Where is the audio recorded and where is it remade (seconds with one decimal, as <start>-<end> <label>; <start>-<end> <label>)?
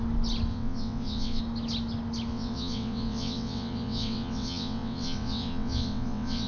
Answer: 0.0-0.5 recorded; 0.5-1.4 remade; 1.4-2.3 recorded; 2.3-6.5 remade